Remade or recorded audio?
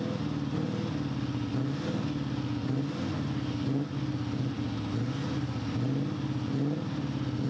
recorded